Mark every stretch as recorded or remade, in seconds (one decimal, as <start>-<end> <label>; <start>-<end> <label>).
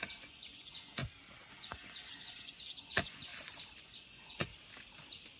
0.0-1.0 remade; 1.0-1.5 recorded; 1.5-3.3 remade; 3.3-3.8 recorded; 3.8-4.5 remade; 4.5-5.4 recorded